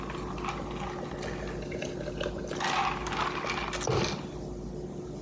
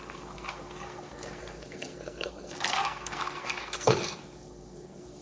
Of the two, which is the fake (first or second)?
second